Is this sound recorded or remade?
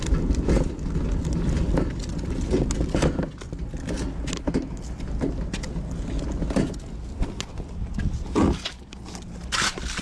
recorded